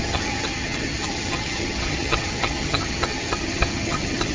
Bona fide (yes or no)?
no